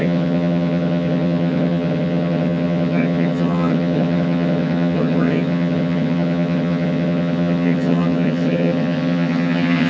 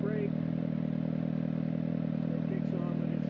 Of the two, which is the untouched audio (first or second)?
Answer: second